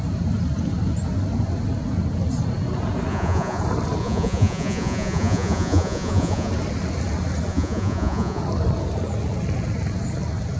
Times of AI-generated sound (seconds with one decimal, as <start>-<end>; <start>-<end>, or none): 3.1-3.6; 4.0-6.5; 7.5-8.4